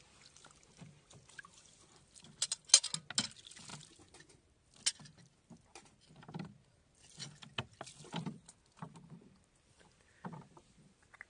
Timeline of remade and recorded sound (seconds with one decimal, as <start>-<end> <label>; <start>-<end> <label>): 0.0-11.3 recorded